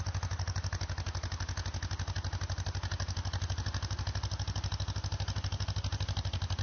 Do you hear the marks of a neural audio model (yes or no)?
no